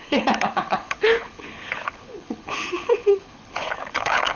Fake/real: fake